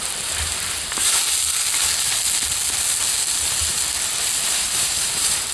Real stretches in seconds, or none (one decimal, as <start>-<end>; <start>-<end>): 1.2-4.5